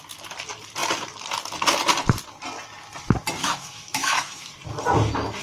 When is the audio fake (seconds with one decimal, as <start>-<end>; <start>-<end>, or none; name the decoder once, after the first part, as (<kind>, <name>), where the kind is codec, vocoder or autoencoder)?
3.4-4.5 (autoencoder, DAC-VAE)